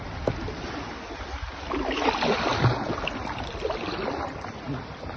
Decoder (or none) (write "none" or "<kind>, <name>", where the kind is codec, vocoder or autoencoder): none